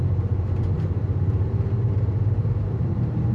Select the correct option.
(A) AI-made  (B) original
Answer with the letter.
B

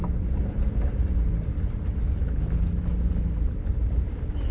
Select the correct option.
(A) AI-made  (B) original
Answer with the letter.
B